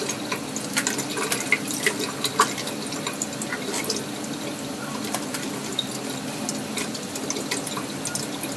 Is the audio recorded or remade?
recorded